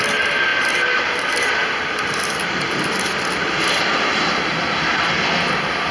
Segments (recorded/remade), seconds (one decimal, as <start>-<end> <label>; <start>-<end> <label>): 0.0-0.5 recorded; 0.5-1.2 remade; 1.2-5.9 recorded